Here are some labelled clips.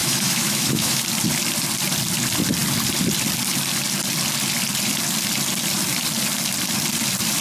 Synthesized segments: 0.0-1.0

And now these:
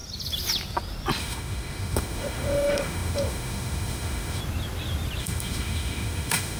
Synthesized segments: 1.2-4.4; 5.2-6.6

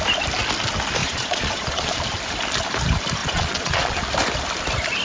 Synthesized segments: 1.0-2.0; 3.2-4.0

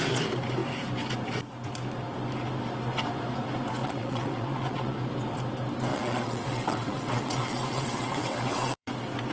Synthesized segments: 3.8-4.9; 5.9-8.9

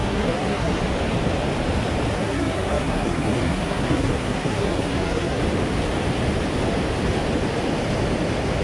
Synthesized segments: 0.0-0.8; 2.1-5.4

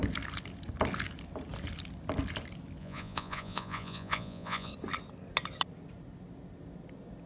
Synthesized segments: 2.8-4.7